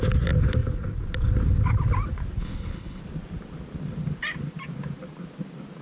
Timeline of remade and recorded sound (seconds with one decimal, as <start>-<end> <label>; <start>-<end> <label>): 0.0-2.4 recorded; 2.4-3.0 remade; 3.0-5.8 recorded